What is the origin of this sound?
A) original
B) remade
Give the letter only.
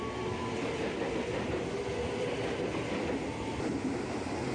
A